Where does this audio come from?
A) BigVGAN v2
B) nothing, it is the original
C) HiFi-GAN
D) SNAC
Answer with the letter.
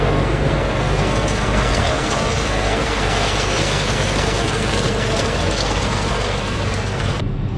D